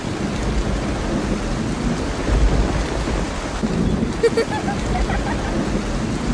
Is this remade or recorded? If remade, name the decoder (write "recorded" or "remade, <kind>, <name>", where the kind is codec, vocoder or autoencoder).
recorded